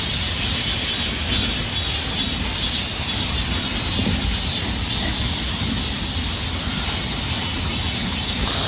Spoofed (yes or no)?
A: no